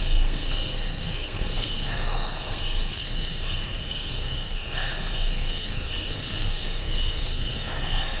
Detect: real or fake fake